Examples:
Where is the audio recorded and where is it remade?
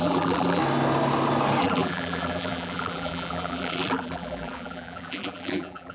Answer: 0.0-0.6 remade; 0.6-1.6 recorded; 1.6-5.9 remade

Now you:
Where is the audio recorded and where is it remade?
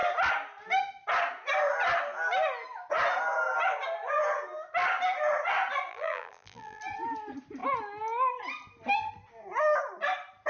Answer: 0.0-5.9 recorded; 5.9-6.8 remade; 6.8-10.5 recorded